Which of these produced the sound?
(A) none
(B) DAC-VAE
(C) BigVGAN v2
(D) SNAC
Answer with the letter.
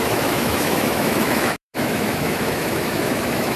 B